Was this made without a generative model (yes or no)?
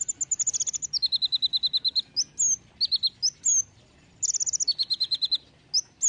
yes